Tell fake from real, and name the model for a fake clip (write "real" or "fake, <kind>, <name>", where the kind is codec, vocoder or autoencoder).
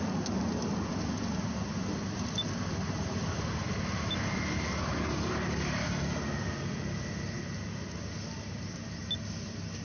real